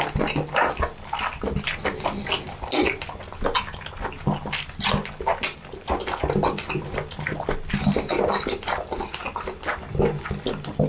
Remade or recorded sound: recorded